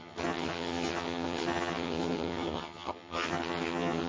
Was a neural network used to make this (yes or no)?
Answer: yes